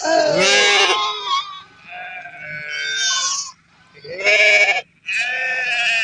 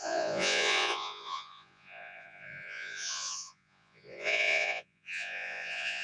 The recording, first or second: first